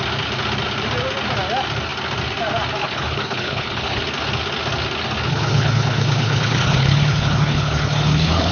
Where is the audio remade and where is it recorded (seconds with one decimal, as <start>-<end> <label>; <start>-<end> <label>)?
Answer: 0.0-2.8 recorded; 2.8-4.0 remade; 4.0-5.3 recorded; 5.3-8.5 remade